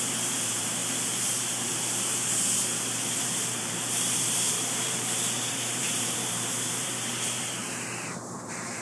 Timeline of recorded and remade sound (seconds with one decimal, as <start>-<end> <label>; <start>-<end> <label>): 0.0-0.8 remade; 0.8-3.2 recorded; 3.2-8.8 remade